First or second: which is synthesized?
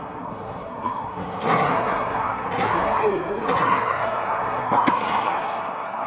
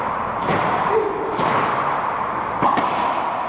first